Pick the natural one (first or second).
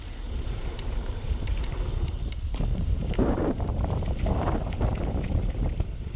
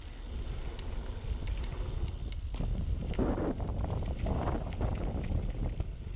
second